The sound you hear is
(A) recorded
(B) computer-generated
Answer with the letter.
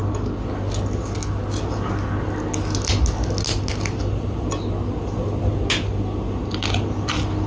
A